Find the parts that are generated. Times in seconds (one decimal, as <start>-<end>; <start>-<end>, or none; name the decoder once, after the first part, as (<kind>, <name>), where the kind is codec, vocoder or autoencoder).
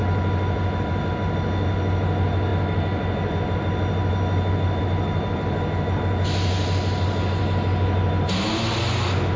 none